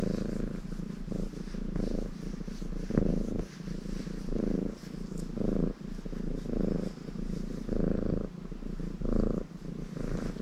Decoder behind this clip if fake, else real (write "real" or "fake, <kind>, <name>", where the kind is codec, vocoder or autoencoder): real